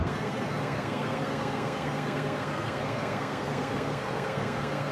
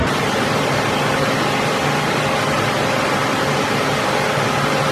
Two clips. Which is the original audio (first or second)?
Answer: second